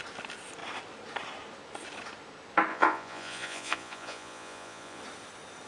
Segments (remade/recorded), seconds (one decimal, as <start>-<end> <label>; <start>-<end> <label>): 0.0-2.7 recorded; 2.7-5.0 remade; 5.0-5.7 recorded